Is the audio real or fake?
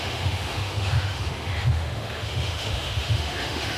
fake